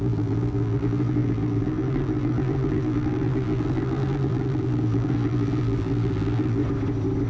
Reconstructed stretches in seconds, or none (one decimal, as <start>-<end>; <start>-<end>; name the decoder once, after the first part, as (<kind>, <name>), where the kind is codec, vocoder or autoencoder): 0.0-6.6 (vocoder, BigVGAN v2)